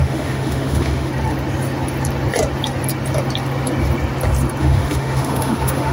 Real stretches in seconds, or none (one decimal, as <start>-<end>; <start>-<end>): 1.1-4.6